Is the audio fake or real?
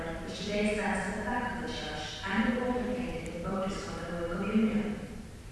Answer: fake